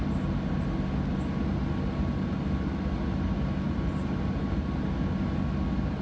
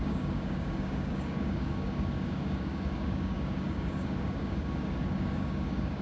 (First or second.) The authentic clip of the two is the first